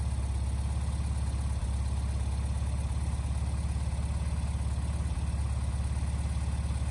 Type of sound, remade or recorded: recorded